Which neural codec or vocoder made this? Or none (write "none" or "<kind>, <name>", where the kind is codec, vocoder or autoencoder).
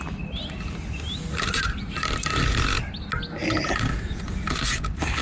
none